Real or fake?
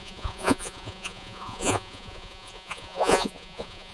fake